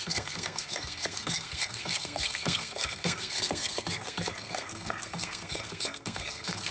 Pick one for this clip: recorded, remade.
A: remade